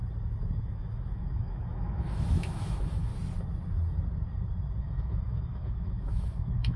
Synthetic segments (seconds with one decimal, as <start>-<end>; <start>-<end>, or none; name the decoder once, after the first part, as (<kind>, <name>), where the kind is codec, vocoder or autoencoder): 0.6-3.1 (autoencoder, DAC-VAE); 4.8-6.8